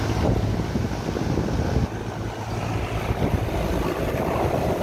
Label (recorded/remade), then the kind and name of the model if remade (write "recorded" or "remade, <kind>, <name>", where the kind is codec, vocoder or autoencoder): recorded